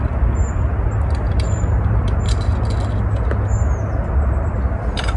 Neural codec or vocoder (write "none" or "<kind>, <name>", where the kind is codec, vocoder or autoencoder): none